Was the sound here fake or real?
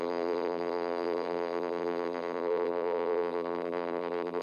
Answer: fake